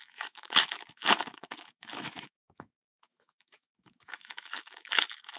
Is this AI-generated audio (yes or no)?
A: yes